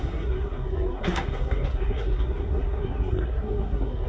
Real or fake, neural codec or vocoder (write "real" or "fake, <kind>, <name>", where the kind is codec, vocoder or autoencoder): fake, codec, SNAC